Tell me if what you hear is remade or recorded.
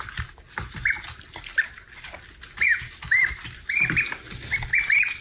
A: recorded